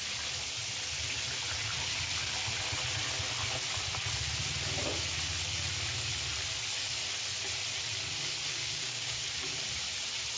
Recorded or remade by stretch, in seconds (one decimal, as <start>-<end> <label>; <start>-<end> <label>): 0.0-8.5 recorded; 8.5-9.2 remade; 9.2-10.4 recorded